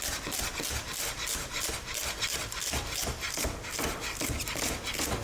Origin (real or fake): real